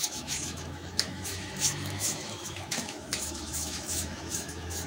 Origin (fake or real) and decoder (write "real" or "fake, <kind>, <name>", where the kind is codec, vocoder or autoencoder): fake, autoencoder, DAC-VAE